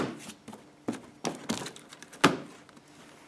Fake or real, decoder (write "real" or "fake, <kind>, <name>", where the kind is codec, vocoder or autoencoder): real